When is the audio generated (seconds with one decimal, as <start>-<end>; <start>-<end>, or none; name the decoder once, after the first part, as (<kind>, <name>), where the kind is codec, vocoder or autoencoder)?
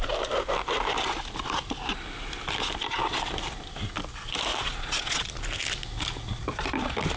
4.5-5.3 (vocoder, Vocos)